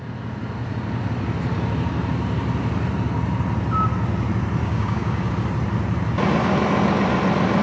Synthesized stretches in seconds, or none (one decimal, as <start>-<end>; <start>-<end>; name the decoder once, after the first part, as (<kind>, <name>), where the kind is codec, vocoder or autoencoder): 4.6-5.3 (codec, DAC)